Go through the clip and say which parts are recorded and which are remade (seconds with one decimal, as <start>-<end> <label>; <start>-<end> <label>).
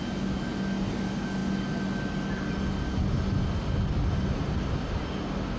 0.0-5.6 recorded